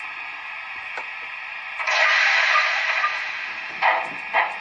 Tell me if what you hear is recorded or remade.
recorded